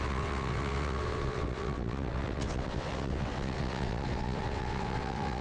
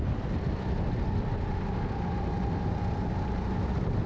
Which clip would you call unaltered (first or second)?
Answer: second